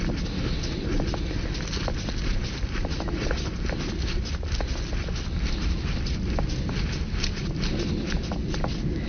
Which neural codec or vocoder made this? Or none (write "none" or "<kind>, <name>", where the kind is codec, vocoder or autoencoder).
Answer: none